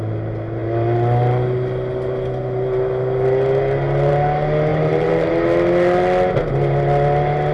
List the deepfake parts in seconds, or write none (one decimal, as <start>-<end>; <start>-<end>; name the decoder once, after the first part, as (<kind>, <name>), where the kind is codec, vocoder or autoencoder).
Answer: 4.7-5.3 (vocoder, BigVGAN v2)